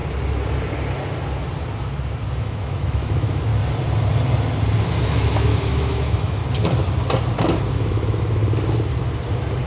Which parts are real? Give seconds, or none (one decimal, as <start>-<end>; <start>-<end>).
0.0-2.4; 3.5-5.1; 6.4-7.7; 8.4-9.7